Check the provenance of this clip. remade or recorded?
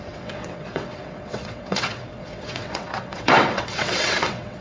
remade